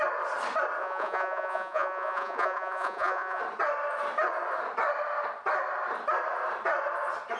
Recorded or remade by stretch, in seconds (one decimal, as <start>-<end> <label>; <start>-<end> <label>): 0.0-0.8 recorded; 0.8-3.4 remade; 3.4-7.4 recorded